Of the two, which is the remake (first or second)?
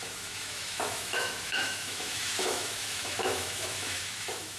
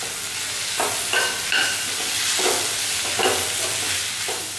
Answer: first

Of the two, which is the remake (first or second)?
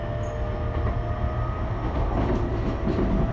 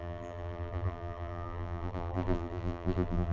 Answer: second